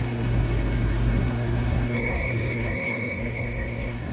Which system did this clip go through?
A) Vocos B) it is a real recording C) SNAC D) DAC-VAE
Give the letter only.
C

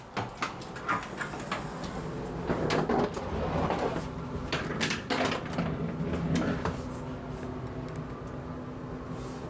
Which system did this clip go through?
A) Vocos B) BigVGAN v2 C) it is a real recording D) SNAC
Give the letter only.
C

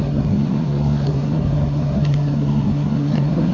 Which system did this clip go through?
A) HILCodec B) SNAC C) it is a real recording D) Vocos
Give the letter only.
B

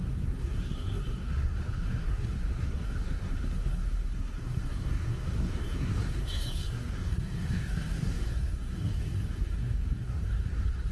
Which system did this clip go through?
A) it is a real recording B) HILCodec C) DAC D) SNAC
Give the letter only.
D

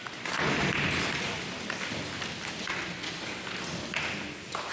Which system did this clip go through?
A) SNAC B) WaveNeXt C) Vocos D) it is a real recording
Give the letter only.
D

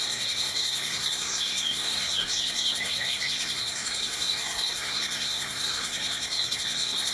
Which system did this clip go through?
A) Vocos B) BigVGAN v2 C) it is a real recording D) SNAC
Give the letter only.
D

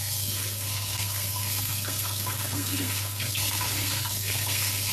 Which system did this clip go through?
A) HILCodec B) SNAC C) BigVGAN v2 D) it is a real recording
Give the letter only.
B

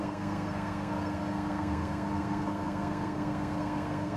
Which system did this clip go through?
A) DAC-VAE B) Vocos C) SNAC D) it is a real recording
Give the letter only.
C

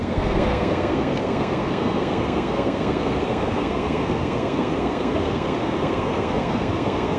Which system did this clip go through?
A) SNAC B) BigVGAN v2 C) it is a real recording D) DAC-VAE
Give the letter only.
A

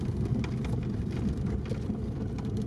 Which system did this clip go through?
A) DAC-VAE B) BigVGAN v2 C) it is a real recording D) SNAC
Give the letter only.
C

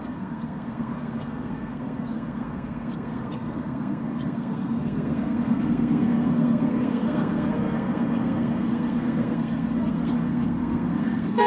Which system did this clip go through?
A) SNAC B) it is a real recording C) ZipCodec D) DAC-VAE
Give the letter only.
A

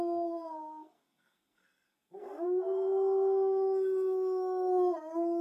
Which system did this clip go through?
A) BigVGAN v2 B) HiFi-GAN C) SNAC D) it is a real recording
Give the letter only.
C